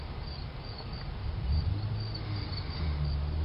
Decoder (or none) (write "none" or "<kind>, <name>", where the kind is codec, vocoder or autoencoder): none